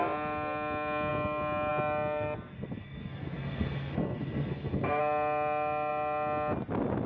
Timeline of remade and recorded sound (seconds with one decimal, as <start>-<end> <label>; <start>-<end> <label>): 0.0-2.5 recorded; 2.5-5.0 remade; 5.0-7.1 recorded